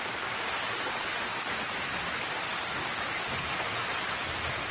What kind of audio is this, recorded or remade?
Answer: recorded